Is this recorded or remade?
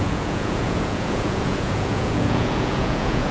remade